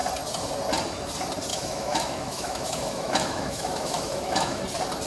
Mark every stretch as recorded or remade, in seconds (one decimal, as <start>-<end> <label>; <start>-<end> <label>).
0.0-1.5 recorded; 1.5-4.6 remade; 4.6-5.1 recorded